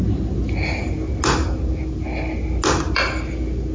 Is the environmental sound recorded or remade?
recorded